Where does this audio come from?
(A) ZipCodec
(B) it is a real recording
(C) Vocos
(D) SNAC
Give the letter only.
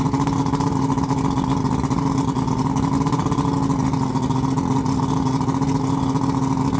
B